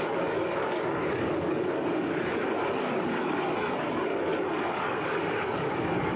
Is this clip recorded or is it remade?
remade